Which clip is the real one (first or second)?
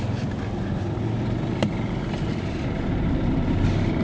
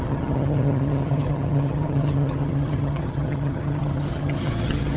first